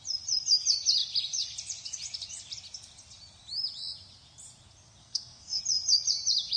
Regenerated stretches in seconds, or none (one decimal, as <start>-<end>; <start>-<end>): 5.0-5.6